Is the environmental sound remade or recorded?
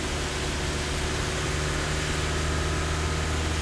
recorded